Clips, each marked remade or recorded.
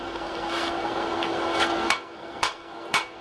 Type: remade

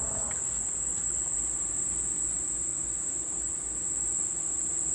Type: recorded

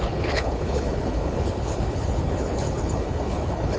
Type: remade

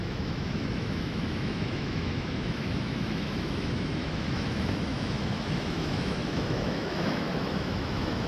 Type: remade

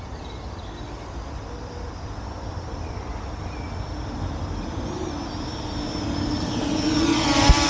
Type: recorded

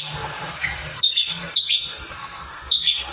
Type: remade